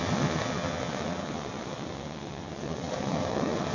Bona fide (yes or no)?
no